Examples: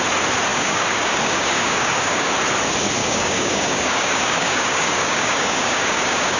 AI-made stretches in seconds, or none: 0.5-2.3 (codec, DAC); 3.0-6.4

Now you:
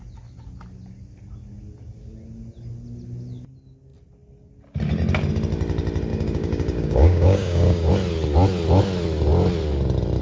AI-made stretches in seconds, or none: 6.1-7.9 (codec, DAC)

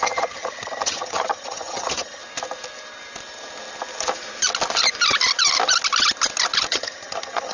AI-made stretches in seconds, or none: 0.0-2.2 (vocoder, HiFi-GAN); 6.7-7.5

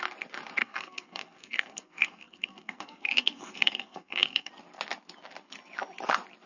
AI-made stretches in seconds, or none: 0.6-4.5 (codec, SNAC)

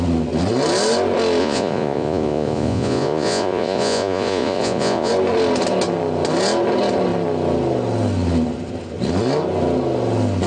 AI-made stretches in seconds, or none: 1.4-5.1 (vocoder, Vocos)

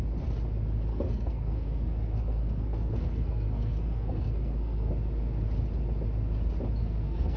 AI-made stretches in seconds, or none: 0.9-4.9 (codec, SNAC); 6.8-7.4

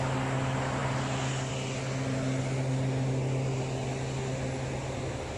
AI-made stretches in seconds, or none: none

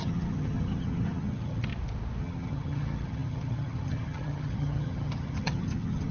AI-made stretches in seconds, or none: 0.0-1.7 (vocoder, HiFi-GAN); 2.2-6.1